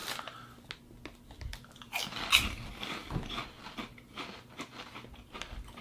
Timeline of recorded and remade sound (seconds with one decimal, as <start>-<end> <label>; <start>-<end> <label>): 0.0-5.8 recorded